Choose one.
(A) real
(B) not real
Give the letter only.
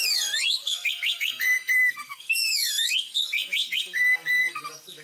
B